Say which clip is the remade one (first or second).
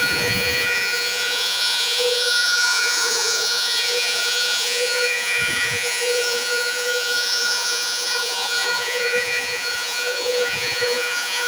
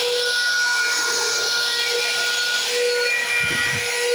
first